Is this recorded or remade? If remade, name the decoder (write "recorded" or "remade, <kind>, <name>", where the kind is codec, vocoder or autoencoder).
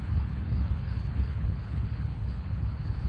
remade, codec, HILCodec